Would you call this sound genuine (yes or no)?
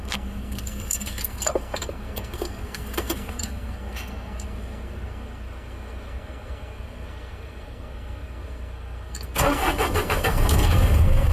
no